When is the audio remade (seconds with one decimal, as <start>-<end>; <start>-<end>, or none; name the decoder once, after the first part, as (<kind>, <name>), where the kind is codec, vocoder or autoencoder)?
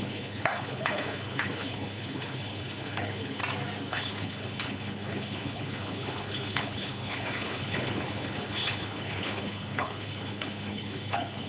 0.0-3.4 (codec, HILCodec); 3.9-11.5